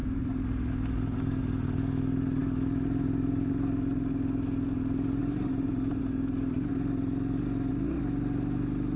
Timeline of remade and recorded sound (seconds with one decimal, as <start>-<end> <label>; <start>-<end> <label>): 0.0-1.4 remade; 1.4-5.2 recorded; 5.2-6.0 remade; 6.0-9.0 recorded